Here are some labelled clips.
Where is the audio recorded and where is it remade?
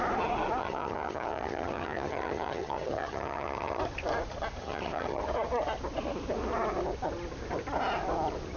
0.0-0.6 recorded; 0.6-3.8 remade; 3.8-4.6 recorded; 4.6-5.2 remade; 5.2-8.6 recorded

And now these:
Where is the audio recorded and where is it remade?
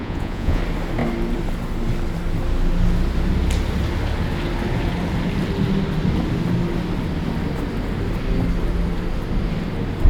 0.0-0.6 remade; 0.6-10.1 recorded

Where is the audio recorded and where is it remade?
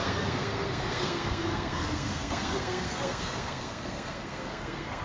0.0-5.0 remade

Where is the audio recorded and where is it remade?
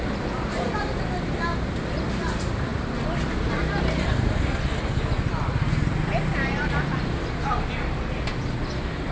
0.0-6.3 recorded; 6.3-7.2 remade; 7.2-9.1 recorded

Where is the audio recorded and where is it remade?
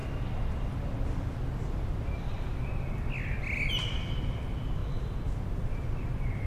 0.0-6.5 recorded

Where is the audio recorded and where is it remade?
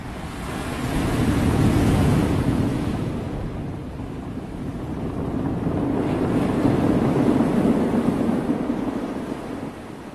0.0-3.4 remade; 3.4-10.1 recorded